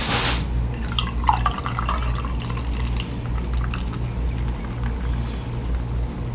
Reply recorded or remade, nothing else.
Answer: recorded